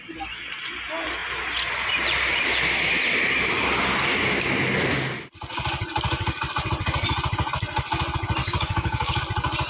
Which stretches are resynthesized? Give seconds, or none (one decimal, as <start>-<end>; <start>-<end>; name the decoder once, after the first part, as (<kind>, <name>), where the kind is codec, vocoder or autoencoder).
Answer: 8.4-9.2 (codec, DAC)